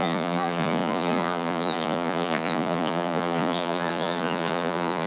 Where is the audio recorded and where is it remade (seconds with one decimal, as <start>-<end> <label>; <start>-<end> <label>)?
0.0-5.1 remade